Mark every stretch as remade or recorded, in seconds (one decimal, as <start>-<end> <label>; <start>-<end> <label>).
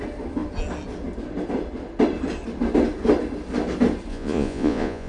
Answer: 0.0-4.1 recorded; 4.1-5.1 remade